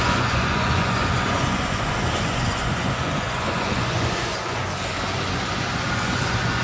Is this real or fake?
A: fake